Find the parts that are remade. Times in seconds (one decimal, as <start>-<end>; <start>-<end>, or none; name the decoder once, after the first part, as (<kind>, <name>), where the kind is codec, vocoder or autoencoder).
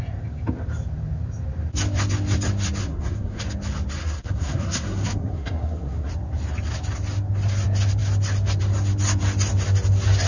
2.8-3.4 (codec, SNAC); 4.0-6.1